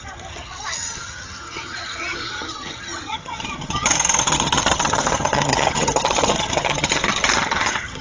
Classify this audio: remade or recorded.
remade